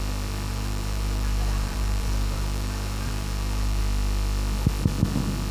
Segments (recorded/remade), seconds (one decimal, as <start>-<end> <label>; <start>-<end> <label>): 0.0-0.5 recorded; 0.5-3.8 remade; 3.8-5.5 recorded